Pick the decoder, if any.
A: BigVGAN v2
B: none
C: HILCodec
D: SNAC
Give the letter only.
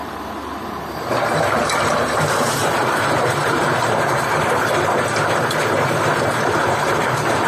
A